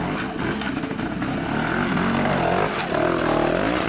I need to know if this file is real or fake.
real